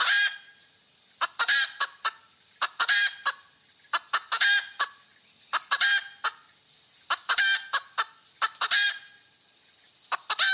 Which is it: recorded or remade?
recorded